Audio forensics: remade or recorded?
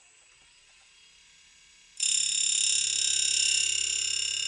recorded